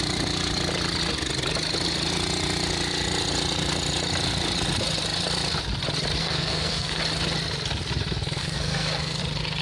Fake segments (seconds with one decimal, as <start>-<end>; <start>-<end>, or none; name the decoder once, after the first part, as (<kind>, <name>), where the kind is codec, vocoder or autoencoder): 6.2-7.0 (codec, SNAC); 8.4-9.2